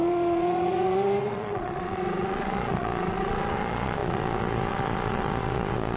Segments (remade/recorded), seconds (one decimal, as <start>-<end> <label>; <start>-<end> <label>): 0.0-6.0 remade